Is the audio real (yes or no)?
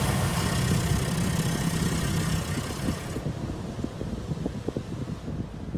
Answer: yes